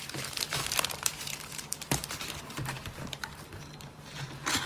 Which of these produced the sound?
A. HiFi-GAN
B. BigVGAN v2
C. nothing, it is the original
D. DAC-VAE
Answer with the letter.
B